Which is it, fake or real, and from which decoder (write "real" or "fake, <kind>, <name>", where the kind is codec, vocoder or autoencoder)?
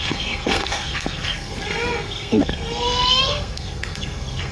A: fake, codec, SNAC